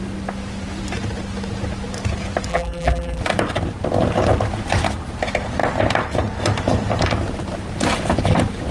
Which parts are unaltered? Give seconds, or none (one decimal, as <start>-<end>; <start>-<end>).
0.0-2.5; 3.2-8.7